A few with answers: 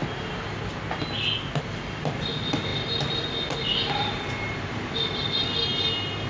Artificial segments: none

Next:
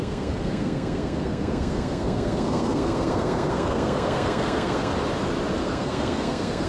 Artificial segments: 0.0-4.9 (codec, SNAC); 5.6-6.7

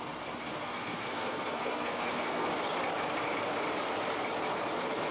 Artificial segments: 0.5-2.5 (codec, SNAC)